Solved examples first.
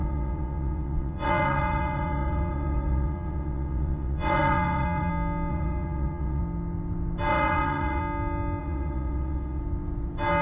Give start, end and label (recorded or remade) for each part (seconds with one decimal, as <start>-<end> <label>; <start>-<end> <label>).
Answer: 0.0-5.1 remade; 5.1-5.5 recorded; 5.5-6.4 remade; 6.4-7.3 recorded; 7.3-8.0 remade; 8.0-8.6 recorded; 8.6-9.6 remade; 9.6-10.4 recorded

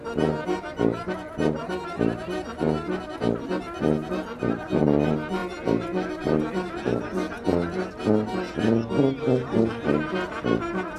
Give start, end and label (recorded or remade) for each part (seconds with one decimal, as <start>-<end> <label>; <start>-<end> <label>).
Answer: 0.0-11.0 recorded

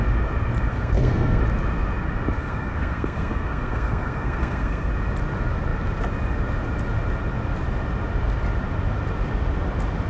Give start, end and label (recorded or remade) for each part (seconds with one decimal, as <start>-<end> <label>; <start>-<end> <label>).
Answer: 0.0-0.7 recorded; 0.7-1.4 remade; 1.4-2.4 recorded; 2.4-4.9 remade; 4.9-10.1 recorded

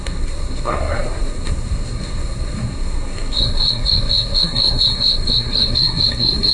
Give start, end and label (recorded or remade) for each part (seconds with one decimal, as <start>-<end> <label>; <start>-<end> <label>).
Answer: 0.0-6.5 remade

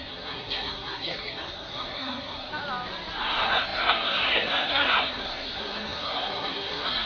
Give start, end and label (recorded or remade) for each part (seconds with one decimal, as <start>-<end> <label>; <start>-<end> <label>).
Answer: 0.0-2.5 remade; 2.5-3.2 recorded; 3.2-7.1 remade